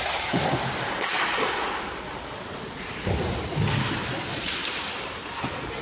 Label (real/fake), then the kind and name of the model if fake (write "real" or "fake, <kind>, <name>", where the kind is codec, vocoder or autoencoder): real